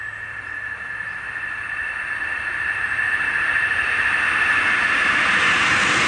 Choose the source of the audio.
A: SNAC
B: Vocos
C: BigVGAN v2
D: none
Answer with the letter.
D